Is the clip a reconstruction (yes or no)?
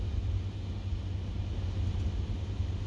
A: no